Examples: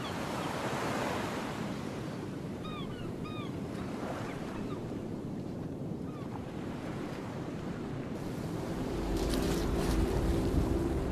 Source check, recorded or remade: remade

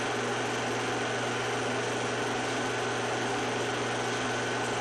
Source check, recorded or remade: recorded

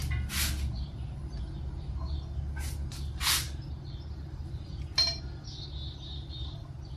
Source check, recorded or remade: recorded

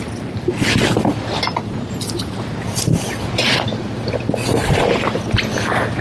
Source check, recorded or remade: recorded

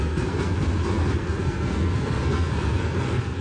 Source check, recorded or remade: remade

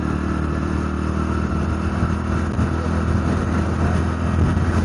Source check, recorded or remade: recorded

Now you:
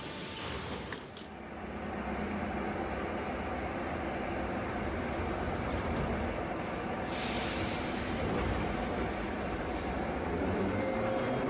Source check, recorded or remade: recorded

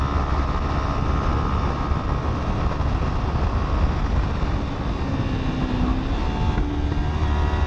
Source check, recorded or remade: recorded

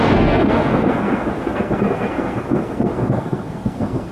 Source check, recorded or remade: remade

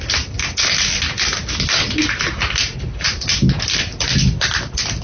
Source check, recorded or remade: recorded